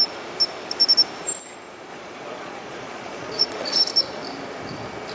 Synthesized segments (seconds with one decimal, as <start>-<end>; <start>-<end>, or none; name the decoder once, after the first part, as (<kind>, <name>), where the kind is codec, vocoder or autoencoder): 1.9-3.8 (vocoder, Vocos)